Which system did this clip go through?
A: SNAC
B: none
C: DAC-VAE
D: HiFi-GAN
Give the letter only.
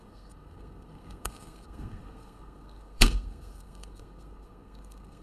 A